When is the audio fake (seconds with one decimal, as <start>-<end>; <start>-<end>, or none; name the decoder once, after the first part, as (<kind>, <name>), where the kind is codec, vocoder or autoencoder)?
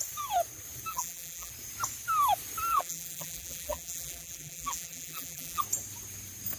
0.9-1.5 (vocoder, BigVGAN v2); 2.7-5.6